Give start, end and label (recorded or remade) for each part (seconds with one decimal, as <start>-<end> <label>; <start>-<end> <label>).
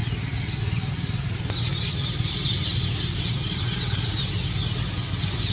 0.0-5.5 recorded